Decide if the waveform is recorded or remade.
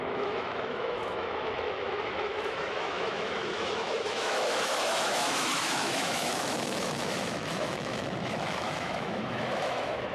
remade